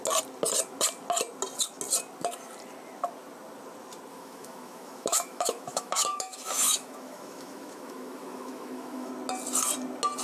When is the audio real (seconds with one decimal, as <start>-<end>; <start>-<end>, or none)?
0.0-4.1; 9.1-10.2